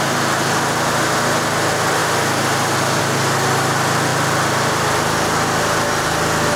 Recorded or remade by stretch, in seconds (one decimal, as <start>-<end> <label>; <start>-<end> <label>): 0.0-6.6 recorded